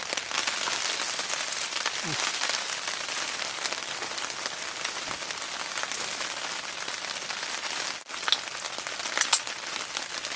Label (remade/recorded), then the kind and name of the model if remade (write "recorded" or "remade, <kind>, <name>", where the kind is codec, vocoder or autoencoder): recorded